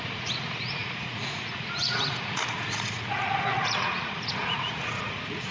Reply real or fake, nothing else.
fake